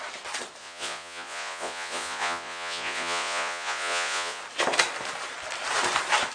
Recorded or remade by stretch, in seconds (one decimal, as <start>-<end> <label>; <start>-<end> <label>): 0.0-0.6 recorded; 0.6-4.4 remade; 4.4-6.3 recorded